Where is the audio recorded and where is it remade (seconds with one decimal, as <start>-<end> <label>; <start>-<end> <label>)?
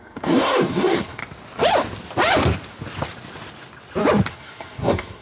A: 0.0-1.2 remade; 1.2-4.3 recorded; 4.3-5.2 remade